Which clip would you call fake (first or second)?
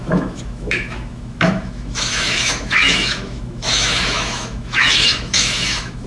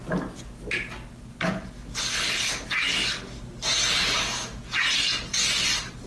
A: first